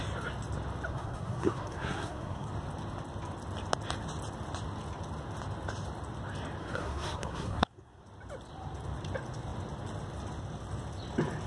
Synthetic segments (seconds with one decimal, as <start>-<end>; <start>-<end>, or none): 0.9-2.5; 6.6-8.0

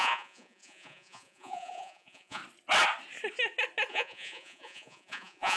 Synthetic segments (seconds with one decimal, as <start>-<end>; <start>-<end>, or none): 0.0-2.4; 3.9-5.6

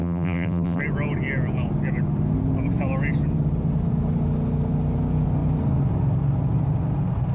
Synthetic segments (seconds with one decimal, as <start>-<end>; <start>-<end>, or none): 0.0-0.8

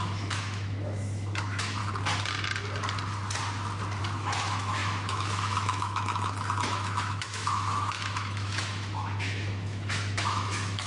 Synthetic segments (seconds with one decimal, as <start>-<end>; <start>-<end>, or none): 0.0-1.8; 4.0-10.9

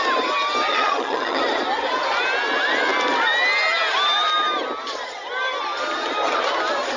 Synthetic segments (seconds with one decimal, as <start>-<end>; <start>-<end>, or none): 0.7-1.4

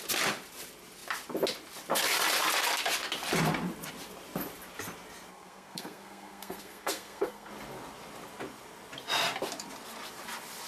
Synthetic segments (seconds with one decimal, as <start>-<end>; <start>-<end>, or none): 5.3-7.5